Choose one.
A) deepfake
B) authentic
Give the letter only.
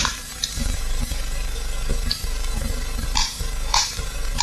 A